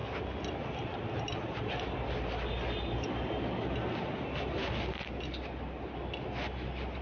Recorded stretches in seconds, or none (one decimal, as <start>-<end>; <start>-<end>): 0.0-7.0

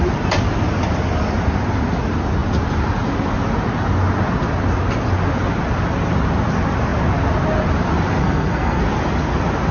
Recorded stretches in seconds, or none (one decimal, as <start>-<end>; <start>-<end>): 0.0-8.2; 8.8-9.7

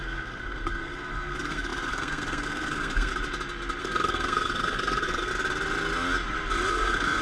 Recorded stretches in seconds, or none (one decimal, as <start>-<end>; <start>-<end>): 3.1-3.8; 5.3-6.7

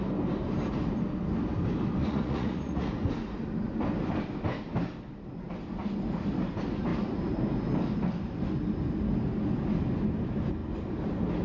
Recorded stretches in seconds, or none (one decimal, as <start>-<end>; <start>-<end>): 0.0-2.0; 2.9-11.4

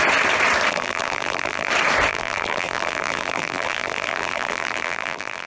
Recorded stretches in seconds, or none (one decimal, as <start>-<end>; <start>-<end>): 0.0-0.7; 1.7-2.1

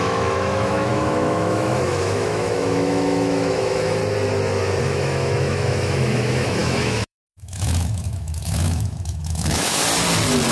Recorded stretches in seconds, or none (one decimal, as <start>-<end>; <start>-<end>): 4.0-4.8; 9.8-10.5

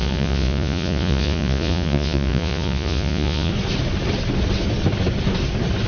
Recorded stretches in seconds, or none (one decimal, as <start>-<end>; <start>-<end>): 3.5-5.9

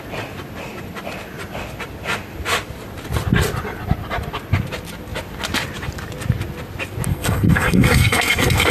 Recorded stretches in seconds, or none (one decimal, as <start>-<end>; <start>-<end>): 0.0-7.1